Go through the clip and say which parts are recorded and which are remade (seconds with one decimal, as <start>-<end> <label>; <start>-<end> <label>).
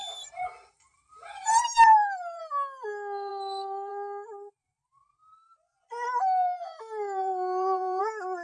0.0-2.4 remade; 2.4-6.1 recorded; 6.1-8.0 remade; 8.0-8.4 recorded